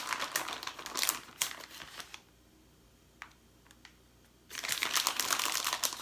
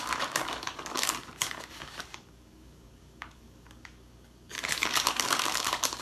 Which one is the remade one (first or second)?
second